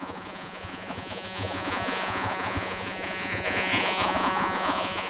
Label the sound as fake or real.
fake